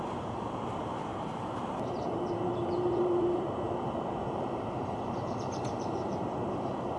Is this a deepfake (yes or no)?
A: yes